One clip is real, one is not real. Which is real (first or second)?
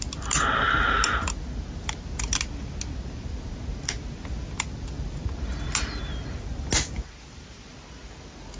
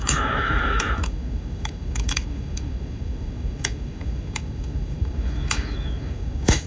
first